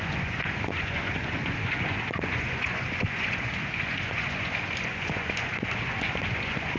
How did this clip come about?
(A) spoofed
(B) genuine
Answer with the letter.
A